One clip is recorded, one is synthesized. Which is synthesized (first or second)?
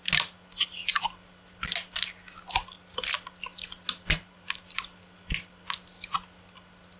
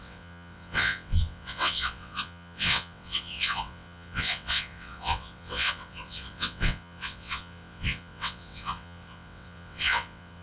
second